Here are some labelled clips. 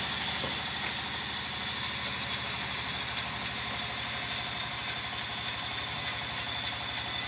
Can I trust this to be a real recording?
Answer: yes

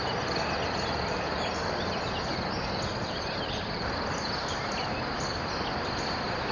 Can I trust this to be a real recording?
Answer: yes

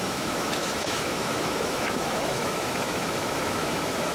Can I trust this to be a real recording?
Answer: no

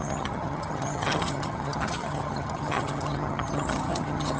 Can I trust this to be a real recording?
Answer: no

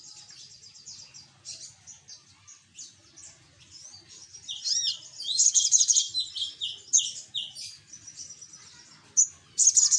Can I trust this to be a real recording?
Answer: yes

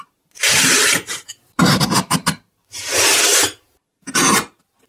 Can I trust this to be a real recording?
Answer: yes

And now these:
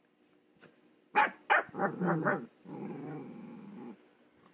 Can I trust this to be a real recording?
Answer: yes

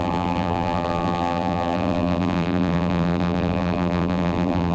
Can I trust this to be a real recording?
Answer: no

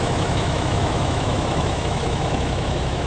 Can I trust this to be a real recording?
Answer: no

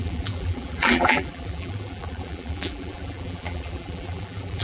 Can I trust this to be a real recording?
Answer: no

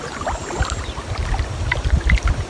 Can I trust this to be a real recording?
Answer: yes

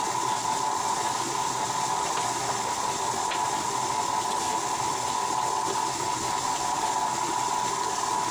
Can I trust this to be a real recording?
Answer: yes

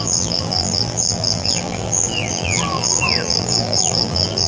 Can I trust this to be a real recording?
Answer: no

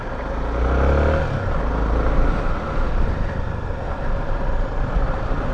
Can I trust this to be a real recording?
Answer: yes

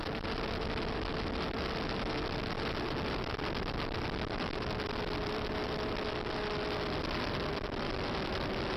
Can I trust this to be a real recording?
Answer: yes